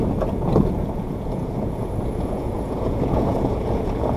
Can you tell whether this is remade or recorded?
remade